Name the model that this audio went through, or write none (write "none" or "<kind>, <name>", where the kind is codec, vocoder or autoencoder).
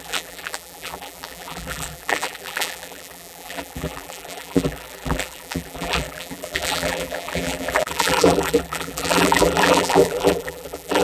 vocoder, BigVGAN v2